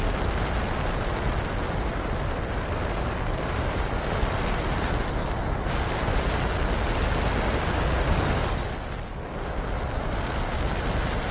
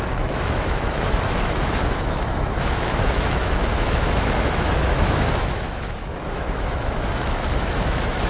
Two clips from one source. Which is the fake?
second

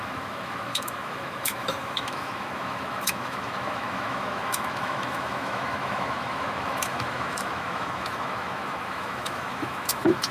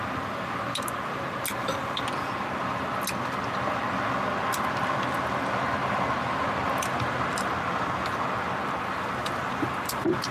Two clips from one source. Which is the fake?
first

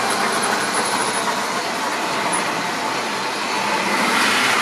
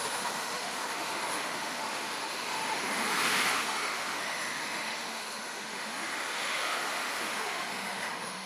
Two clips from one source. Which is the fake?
second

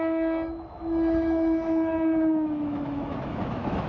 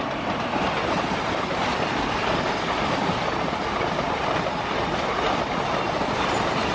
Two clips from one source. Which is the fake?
first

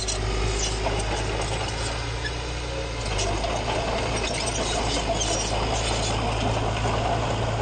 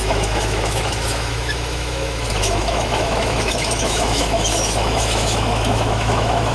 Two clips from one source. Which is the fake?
second